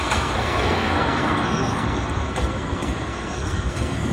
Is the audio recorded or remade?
remade